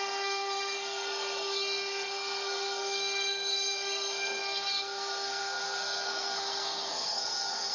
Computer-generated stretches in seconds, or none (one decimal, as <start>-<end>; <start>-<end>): 0.0-7.7